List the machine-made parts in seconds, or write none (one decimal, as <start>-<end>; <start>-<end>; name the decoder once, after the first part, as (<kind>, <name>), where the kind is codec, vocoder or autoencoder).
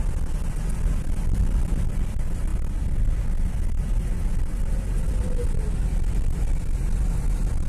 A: none